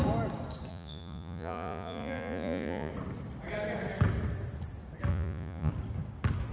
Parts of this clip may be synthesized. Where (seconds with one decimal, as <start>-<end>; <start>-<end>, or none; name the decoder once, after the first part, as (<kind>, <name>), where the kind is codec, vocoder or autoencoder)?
0.7-2.9 (vocoder, Vocos); 5.1-5.7